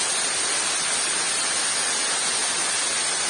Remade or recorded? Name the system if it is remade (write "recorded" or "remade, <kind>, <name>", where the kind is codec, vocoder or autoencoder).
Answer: recorded